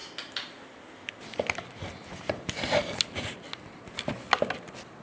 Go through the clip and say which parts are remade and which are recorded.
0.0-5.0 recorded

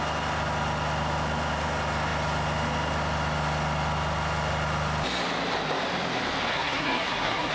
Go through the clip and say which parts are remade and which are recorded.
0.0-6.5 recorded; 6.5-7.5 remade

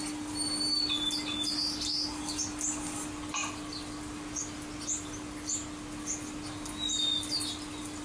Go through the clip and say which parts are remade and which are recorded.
0.0-8.0 recorded

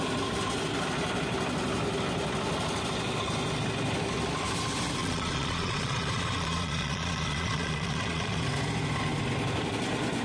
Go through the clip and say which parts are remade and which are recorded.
0.0-5.0 recorded; 5.0-8.4 remade; 8.4-10.2 recorded

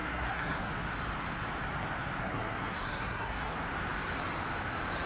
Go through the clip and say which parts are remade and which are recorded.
0.0-0.7 remade; 0.7-2.2 recorded; 2.2-3.5 remade; 3.5-5.1 recorded

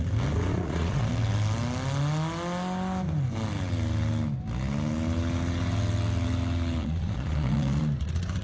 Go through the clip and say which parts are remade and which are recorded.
0.0-0.5 recorded; 0.5-1.1 remade; 1.1-6.8 recorded; 6.8-7.8 remade; 7.8-8.4 recorded